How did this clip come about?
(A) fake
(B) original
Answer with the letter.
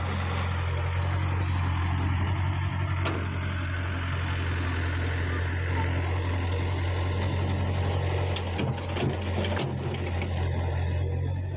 B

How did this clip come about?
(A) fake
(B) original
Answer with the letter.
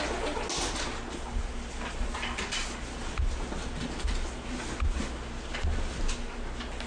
B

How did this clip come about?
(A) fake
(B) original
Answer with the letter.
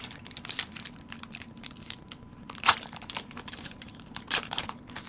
A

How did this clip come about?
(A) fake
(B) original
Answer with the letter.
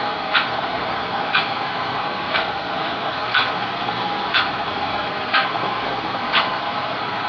A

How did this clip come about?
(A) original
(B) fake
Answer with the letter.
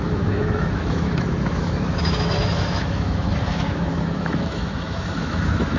B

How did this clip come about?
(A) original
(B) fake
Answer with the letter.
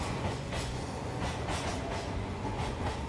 B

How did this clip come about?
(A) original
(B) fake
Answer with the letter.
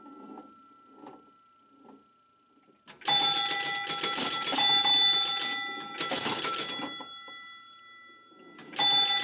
A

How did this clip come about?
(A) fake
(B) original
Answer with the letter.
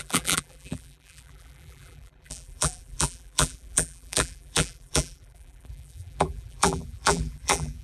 A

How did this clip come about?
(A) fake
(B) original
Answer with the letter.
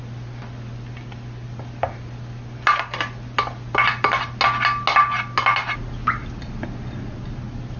B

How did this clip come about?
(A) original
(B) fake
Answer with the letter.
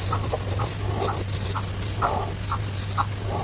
A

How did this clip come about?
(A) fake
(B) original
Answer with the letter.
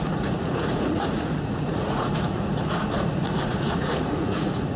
A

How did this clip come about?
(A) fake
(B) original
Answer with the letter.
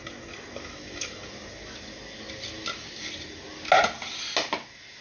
B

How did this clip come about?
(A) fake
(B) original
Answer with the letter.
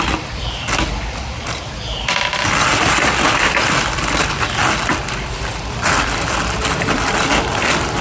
A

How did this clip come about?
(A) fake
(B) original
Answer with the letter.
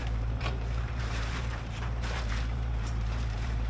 A